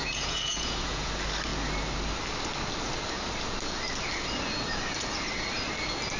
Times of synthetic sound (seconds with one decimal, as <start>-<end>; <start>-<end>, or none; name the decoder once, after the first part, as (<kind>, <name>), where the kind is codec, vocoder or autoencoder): 0.0-1.1 (vocoder, Vocos)